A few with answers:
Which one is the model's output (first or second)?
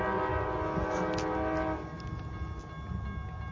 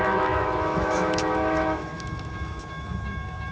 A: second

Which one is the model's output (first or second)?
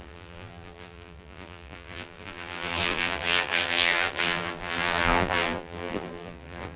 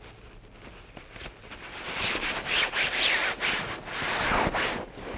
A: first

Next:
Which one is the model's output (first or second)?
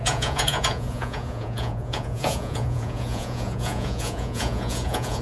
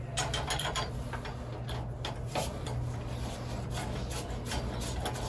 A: first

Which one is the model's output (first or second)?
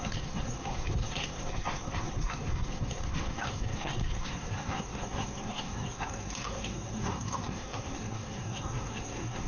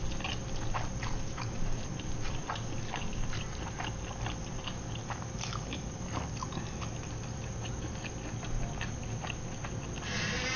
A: first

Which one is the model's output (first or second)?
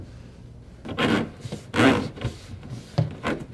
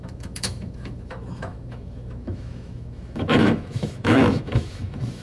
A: second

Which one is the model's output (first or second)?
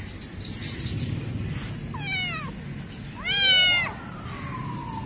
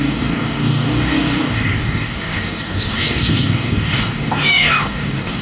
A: second